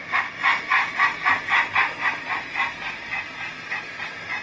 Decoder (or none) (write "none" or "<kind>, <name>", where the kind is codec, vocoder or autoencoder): none